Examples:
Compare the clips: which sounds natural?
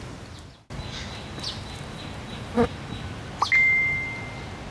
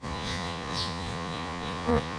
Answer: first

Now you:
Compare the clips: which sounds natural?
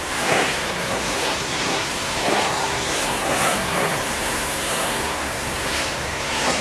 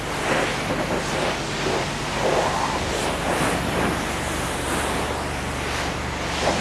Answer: second